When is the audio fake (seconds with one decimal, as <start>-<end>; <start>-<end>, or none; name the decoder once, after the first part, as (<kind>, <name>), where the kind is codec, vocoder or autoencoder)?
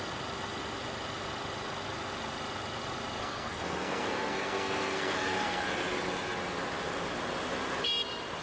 3.2-5.6 (codec, SNAC)